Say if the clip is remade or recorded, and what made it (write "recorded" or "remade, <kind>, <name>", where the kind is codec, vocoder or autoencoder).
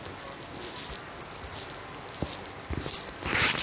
recorded